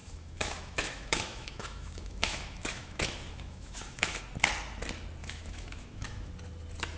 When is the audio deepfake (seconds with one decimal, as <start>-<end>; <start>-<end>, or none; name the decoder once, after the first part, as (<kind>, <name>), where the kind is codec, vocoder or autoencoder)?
0.0-4.2 (autoencoder, DAC-VAE); 5.2-6.3